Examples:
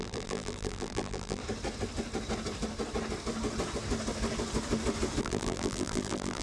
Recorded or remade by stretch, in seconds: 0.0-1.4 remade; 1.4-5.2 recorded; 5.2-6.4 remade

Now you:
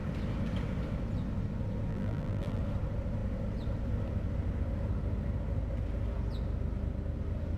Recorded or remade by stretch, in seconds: 0.0-1.9 recorded; 1.9-2.6 remade; 2.6-7.6 recorded

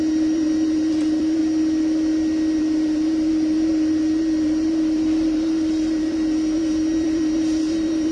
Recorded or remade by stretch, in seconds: 0.0-1.4 remade; 1.4-2.6 recorded; 2.6-8.1 remade